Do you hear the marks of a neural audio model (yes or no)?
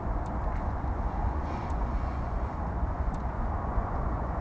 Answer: yes